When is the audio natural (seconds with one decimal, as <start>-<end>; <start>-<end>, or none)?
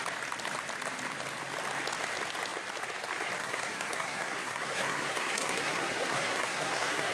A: 0.0-3.4